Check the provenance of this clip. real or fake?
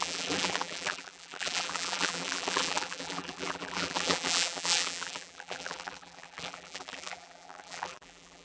fake